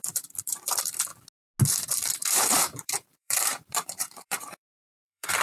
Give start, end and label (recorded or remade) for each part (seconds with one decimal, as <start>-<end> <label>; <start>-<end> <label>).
0.0-1.1 remade; 1.1-1.7 recorded; 1.7-5.4 remade